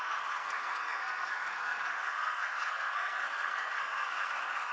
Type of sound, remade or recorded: remade